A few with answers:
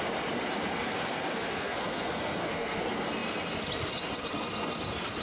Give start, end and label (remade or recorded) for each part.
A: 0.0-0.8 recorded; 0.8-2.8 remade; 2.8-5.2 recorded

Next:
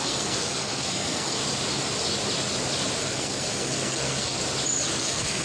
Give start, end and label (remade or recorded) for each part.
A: 0.0-1.4 remade; 1.4-3.0 recorded; 3.0-4.4 remade; 4.4-5.0 recorded; 5.0-5.4 remade

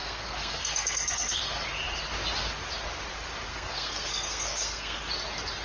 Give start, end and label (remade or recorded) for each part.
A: 0.0-1.4 remade; 1.4-3.5 recorded; 3.5-5.1 remade; 5.1-5.6 recorded

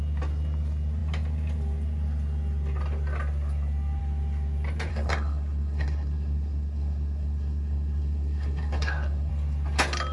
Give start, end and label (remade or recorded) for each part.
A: 0.0-4.9 recorded; 4.9-9.3 remade; 9.3-10.1 recorded

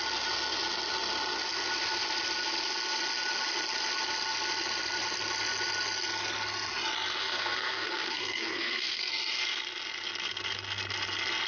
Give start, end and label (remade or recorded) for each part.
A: 0.0-7.2 recorded; 7.2-9.1 remade; 9.1-11.5 recorded

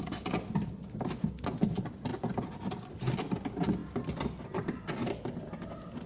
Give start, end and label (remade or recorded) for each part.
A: 0.0-6.1 recorded

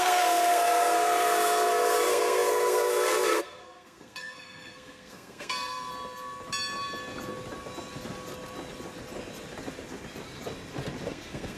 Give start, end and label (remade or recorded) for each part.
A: 0.0-5.9 remade; 5.9-11.1 recorded; 11.1-11.6 remade

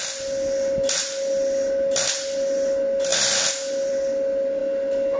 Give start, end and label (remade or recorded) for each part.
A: 0.0-5.2 recorded